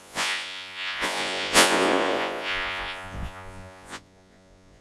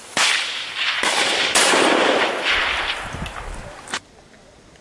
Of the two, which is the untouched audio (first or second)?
second